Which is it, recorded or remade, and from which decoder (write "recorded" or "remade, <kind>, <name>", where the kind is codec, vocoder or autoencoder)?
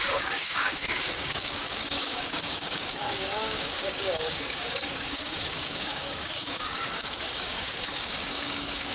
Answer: remade, codec, DAC